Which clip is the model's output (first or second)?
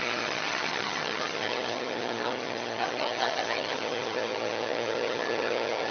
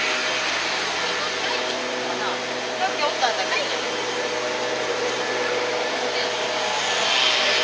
first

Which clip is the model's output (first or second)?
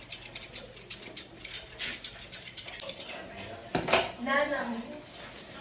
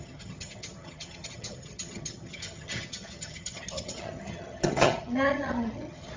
second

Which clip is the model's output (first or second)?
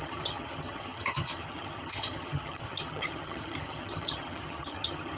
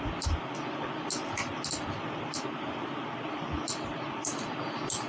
first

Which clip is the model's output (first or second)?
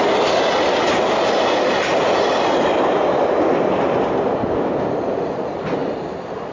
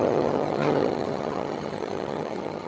second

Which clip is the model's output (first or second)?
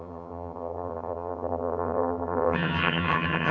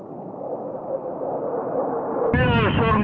first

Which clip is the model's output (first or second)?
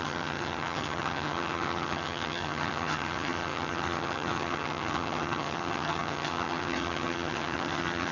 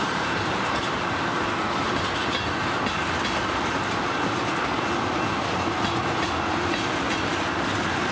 first